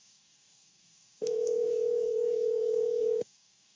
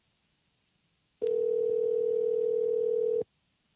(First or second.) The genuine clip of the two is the second